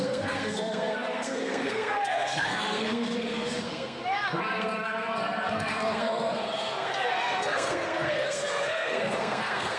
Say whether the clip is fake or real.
fake